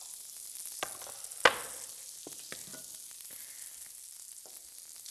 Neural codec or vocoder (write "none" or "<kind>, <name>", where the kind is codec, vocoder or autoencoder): none